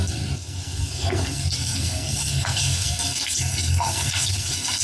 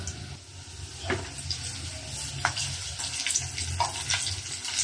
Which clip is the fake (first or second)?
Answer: first